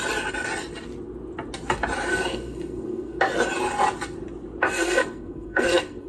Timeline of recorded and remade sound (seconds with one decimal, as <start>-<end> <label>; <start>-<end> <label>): 0.0-2.1 recorded; 2.1-3.2 remade; 3.2-4.7 recorded; 4.7-6.1 remade